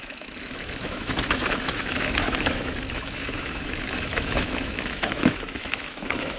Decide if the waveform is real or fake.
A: fake